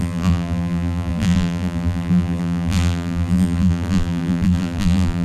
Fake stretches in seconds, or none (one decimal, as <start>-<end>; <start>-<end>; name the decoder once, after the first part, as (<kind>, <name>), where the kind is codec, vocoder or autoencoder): 0.0-5.2 (vocoder, BigVGAN v2)